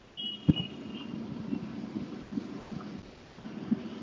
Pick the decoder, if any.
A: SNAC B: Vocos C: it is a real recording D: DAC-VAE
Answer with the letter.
C